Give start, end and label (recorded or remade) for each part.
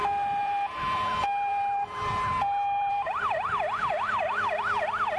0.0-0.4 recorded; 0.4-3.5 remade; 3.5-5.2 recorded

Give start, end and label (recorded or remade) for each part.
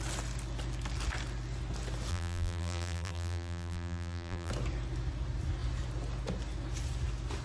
0.0-2.1 recorded; 2.1-4.5 remade; 4.5-7.4 recorded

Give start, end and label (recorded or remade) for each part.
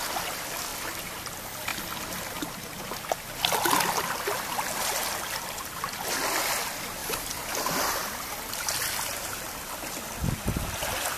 0.0-0.7 recorded; 0.7-1.2 remade; 1.2-1.7 recorded; 1.7-2.4 remade; 2.4-7.0 recorded; 7.0-7.5 remade; 7.5-8.0 recorded; 8.0-10.4 remade; 10.4-11.2 recorded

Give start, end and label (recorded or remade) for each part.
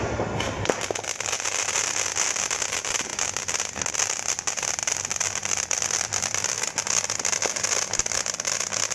0.0-4.8 recorded; 4.8-6.5 remade; 6.5-8.9 recorded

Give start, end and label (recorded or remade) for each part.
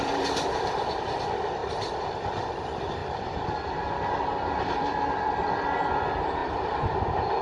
0.0-1.6 remade; 1.6-2.6 recorded; 2.6-3.0 remade; 3.0-4.7 recorded; 4.7-7.4 remade